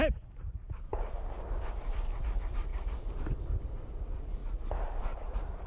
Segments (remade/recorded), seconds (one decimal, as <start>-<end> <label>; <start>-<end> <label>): 0.0-4.4 remade; 4.4-5.0 recorded; 5.0-5.7 remade